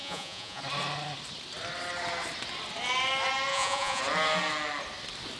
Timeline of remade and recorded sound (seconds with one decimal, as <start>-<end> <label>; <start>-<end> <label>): 0.0-0.6 remade; 0.6-3.5 recorded; 3.5-4.0 remade; 4.0-5.4 recorded